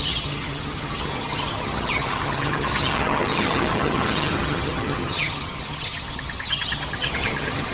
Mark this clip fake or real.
fake